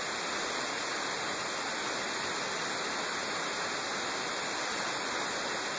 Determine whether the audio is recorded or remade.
recorded